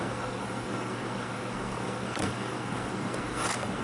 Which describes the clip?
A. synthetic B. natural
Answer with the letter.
A